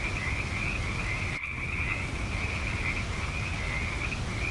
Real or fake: real